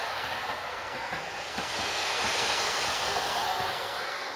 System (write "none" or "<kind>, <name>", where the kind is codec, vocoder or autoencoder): codec, SNAC